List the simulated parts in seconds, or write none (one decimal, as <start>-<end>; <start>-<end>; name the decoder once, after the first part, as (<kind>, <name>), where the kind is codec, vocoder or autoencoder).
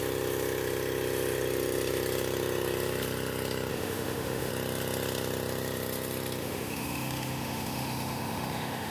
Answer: 3.7-4.5 (autoencoder, DAC-VAE); 6.4-8.9